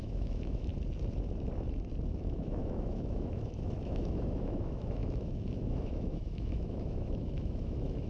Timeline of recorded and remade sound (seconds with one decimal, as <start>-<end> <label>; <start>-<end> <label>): 0.0-0.7 remade; 0.7-2.2 recorded; 2.2-8.1 remade